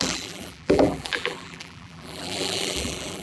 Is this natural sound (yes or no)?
no